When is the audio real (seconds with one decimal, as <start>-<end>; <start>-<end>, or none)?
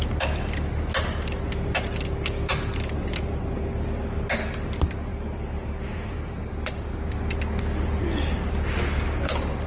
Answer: 0.0-5.1; 6.9-9.7